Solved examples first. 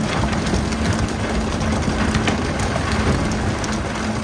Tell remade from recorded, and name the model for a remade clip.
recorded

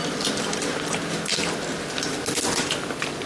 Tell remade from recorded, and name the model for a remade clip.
recorded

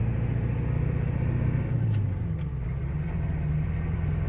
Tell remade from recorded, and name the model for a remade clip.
recorded